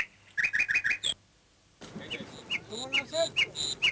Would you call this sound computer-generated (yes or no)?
no